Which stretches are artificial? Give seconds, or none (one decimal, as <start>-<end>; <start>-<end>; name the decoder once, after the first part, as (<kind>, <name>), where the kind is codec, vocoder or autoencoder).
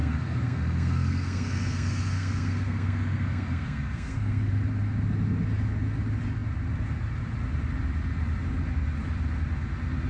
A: 0.0-4.5 (codec, SNAC)